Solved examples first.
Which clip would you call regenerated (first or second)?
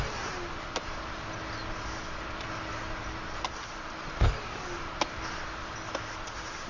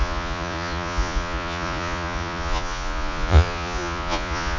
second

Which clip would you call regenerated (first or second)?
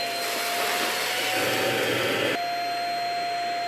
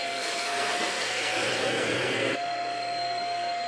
second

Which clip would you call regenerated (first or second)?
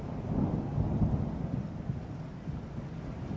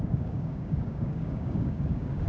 second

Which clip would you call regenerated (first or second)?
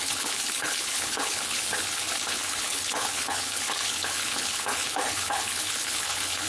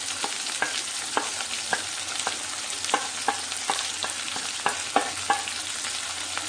first